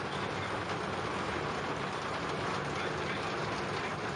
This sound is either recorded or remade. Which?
recorded